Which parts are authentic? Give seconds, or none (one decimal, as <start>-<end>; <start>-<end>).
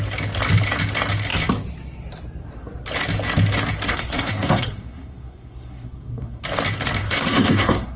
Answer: 0.0-3.9; 6.4-7.0